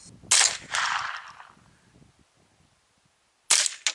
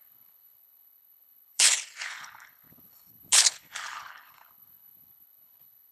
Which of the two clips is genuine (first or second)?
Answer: first